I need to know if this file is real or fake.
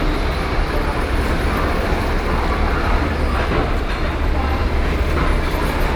fake